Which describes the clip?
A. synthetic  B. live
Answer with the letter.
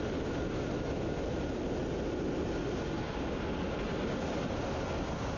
B